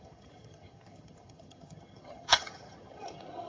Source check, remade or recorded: remade